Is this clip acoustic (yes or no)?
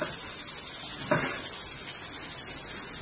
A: yes